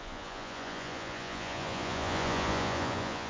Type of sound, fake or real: fake